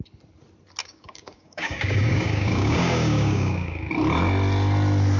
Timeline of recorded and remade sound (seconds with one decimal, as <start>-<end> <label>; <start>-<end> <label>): 0.0-0.8 recorded; 0.8-3.9 remade; 3.9-5.2 recorded